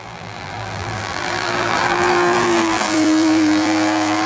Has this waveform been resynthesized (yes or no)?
yes